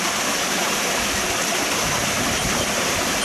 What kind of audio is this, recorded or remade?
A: remade